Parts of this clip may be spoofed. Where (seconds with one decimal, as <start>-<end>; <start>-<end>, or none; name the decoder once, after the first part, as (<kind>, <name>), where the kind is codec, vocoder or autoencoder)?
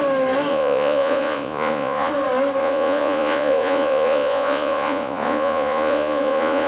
0.5-2.1 (vocoder, Vocos); 2.6-6.7